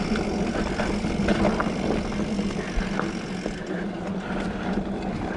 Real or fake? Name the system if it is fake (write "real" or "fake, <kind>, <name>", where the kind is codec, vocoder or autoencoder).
real